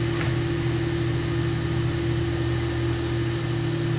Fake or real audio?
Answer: real